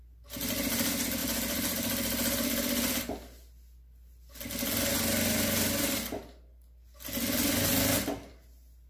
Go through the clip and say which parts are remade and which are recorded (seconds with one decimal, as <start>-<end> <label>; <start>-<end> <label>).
0.0-1.2 recorded; 1.2-3.0 remade; 3.0-8.9 recorded